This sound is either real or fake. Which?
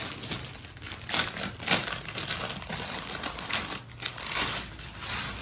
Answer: real